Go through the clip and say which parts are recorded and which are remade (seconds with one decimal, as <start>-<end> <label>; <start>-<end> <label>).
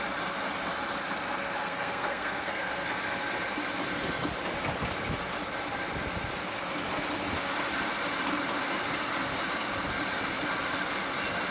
0.0-1.6 recorded; 1.6-2.9 remade; 2.9-11.5 recorded